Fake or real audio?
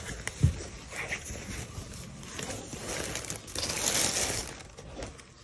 real